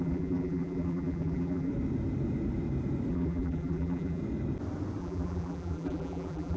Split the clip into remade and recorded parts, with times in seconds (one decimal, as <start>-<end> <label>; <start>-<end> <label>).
0.0-1.7 remade; 1.7-3.1 recorded; 3.1-4.2 remade; 4.2-5.0 recorded; 5.0-6.6 remade